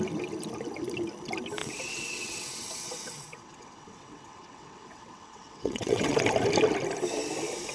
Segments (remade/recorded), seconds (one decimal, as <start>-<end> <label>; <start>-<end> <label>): 0.0-1.6 recorded; 1.6-6.2 remade; 6.2-7.7 recorded